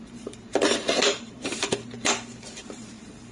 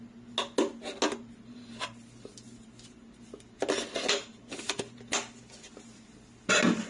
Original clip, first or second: second